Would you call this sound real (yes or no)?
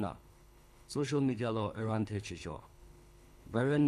no